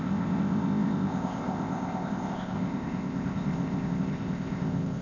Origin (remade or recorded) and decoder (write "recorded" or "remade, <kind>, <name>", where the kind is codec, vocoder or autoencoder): remade, codec, ZipCodec